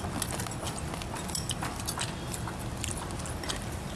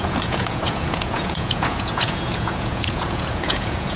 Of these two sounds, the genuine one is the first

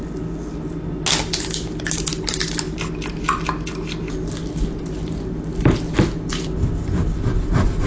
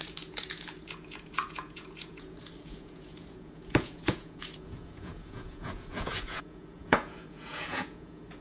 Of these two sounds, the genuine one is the first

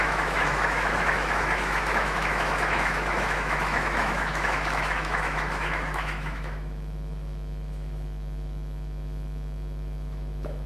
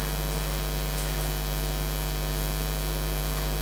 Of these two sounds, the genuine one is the second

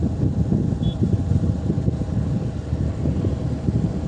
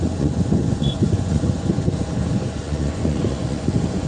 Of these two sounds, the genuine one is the first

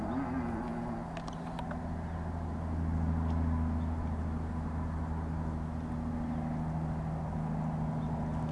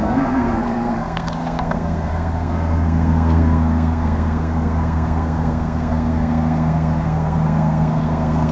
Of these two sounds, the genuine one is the first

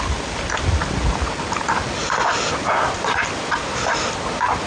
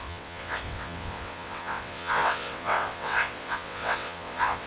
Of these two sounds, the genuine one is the first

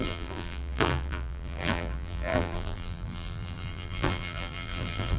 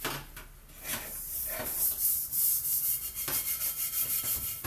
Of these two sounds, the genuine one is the second